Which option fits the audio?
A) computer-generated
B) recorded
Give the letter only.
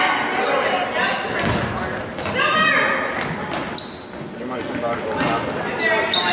B